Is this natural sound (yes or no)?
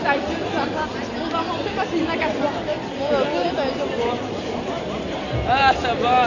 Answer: yes